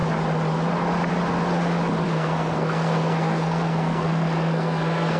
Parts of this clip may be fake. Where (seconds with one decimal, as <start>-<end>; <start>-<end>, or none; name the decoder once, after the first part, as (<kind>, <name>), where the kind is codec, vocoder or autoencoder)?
2.1-5.2 (codec, SNAC)